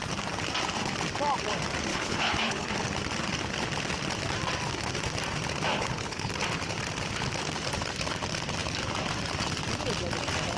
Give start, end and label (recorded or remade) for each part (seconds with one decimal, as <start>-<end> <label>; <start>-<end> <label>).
0.0-1.9 recorded; 1.9-2.7 remade; 2.7-5.7 recorded; 5.7-6.3 remade; 6.3-10.6 recorded